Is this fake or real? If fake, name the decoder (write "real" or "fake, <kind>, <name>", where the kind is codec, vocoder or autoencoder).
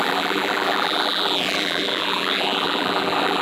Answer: fake, vocoder, BigVGAN v2